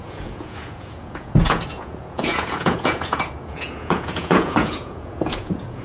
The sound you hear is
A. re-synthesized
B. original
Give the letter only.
A